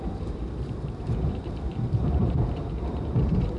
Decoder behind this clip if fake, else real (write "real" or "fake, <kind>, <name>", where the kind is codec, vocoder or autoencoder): fake, vocoder, BigVGAN v2